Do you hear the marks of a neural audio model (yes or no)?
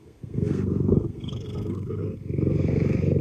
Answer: yes